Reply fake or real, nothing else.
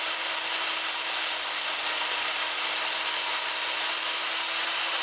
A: real